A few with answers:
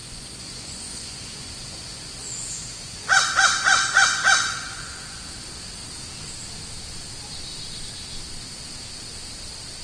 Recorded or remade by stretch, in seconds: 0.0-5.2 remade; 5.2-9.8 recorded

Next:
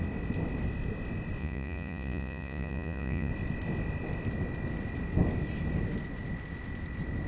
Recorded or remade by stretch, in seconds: 0.0-1.4 recorded; 1.4-3.3 remade; 3.3-7.3 recorded

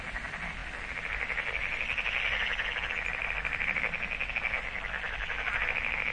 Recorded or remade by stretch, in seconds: 0.0-6.1 recorded

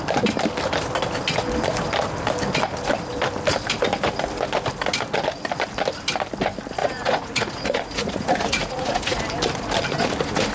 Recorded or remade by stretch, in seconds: 0.0-6.8 recorded; 6.8-9.2 remade; 9.2-10.5 recorded